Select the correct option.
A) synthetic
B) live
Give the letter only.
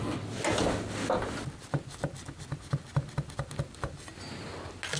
B